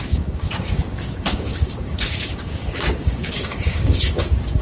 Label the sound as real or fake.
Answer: fake